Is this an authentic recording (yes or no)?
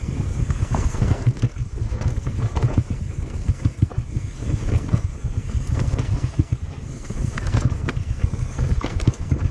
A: no